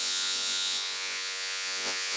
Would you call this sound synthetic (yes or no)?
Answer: yes